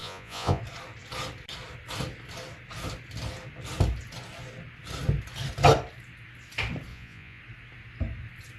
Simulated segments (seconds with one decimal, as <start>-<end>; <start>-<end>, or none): 0.0-0.6; 6.9-7.4